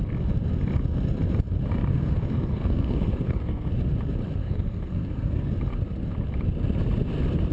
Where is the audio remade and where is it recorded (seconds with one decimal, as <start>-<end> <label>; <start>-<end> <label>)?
0.0-1.9 recorded; 1.9-3.7 remade; 3.7-4.4 recorded; 4.4-5.5 remade; 5.5-7.5 recorded

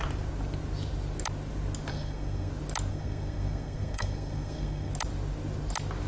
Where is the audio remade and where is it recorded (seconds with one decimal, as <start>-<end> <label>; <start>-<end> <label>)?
0.0-1.9 recorded; 1.9-2.5 remade; 2.5-2.9 recorded; 2.9-4.9 remade; 4.9-6.1 recorded